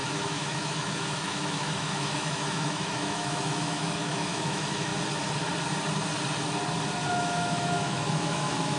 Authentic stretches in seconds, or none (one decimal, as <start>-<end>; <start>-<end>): 4.9-7.1